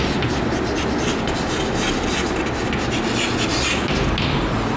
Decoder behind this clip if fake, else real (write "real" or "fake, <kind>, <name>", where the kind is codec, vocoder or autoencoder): real